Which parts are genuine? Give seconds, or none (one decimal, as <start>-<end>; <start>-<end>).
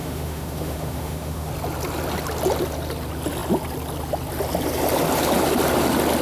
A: 1.5-6.2